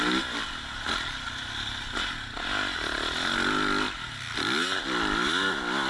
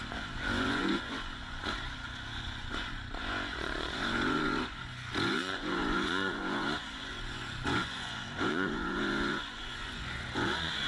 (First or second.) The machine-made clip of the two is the second